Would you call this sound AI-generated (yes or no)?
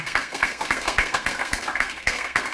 yes